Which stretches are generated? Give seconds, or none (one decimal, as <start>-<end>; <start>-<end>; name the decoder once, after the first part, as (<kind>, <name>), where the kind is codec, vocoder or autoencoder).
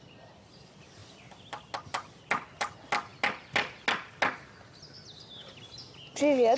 none